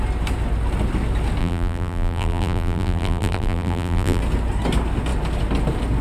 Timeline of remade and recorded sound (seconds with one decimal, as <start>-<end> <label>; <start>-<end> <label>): 0.0-1.4 recorded; 1.4-4.2 remade; 4.2-6.0 recorded